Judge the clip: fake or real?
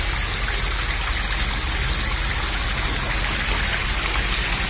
real